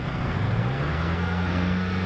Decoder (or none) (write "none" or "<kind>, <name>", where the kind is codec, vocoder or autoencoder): codec, SNAC